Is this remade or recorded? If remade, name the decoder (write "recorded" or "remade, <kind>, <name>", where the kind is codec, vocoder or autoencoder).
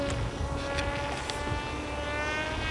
recorded